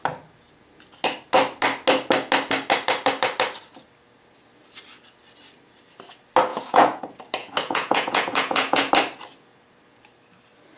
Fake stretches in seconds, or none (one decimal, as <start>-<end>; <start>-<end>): 6.5-7.0; 7.4-8.9